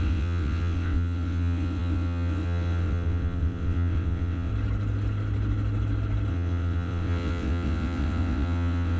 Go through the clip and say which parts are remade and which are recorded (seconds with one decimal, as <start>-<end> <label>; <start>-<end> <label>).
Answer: 0.0-4.5 remade; 4.5-6.3 recorded; 6.3-9.0 remade